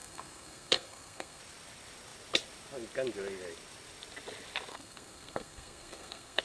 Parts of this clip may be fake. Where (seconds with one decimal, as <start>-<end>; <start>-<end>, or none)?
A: 0.0-1.4; 4.7-6.4

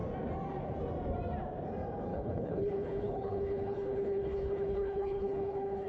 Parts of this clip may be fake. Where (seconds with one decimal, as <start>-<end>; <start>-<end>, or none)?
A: 2.1-5.9

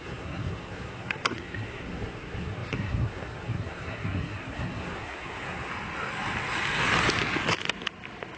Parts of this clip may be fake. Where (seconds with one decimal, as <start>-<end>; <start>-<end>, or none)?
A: 0.0-5.7

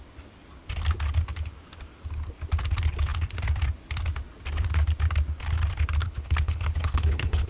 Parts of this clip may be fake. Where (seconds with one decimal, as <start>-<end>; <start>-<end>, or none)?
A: 6.0-7.5

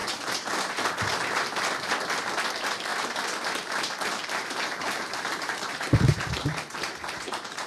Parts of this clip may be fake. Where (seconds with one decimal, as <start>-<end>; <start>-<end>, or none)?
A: 2.9-7.7